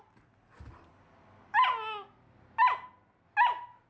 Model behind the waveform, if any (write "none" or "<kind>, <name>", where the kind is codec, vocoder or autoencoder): none